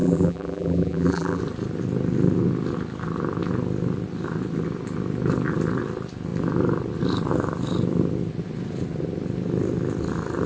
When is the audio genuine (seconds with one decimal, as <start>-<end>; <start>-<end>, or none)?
1.4-10.5